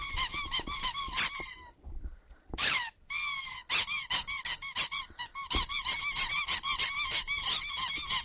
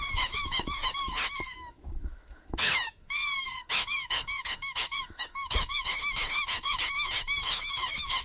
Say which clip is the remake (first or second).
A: second